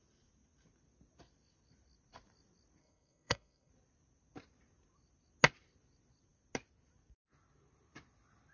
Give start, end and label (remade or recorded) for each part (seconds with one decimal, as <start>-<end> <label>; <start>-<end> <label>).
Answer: 0.0-2.8 recorded; 2.8-3.7 remade; 3.7-8.5 recorded